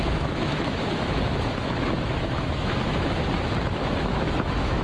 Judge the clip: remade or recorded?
remade